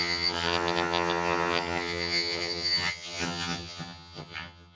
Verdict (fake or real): fake